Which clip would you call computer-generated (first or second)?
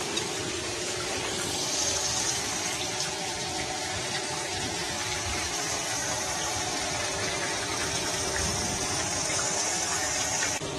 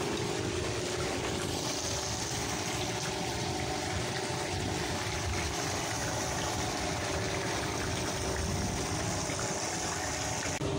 first